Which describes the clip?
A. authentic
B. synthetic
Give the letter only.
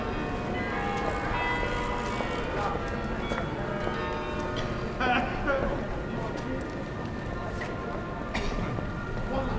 A